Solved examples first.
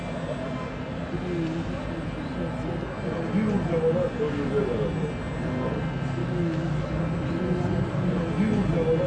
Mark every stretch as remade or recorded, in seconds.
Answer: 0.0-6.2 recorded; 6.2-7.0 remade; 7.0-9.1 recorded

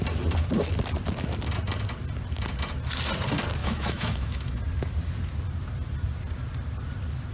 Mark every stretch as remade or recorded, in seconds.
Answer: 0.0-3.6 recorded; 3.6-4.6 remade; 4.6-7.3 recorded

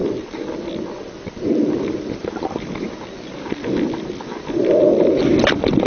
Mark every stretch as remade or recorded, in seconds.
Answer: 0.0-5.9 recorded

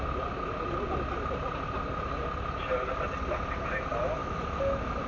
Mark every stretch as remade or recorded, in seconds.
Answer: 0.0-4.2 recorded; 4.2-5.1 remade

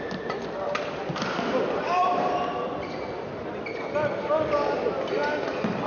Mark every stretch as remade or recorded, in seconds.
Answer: 0.0-5.9 recorded

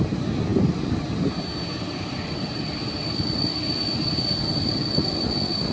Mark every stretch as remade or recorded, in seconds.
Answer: 0.0-5.7 recorded